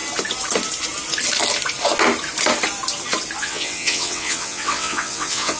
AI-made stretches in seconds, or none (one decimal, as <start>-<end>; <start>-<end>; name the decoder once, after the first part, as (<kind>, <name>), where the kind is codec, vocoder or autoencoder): 3.4-5.6 (vocoder, WaveNeXt)